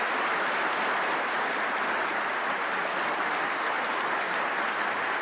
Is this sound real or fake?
real